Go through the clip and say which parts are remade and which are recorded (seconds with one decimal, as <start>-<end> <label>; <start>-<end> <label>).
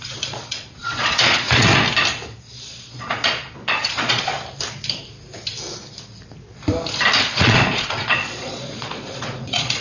0.0-1.7 remade; 1.7-2.4 recorded; 2.4-4.3 remade; 4.3-7.2 recorded; 7.2-9.8 remade